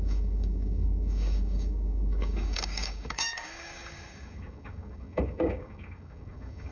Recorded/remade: remade